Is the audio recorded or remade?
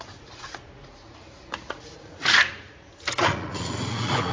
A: remade